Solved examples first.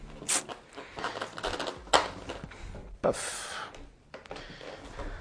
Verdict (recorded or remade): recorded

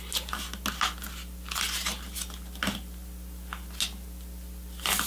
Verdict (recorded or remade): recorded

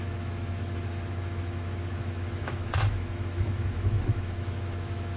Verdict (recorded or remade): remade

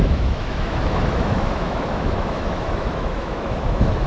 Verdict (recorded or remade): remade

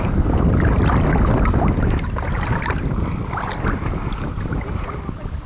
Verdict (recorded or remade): recorded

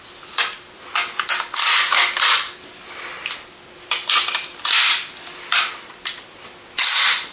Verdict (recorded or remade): recorded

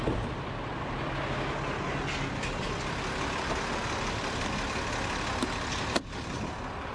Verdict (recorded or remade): recorded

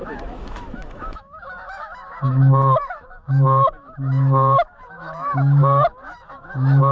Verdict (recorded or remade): remade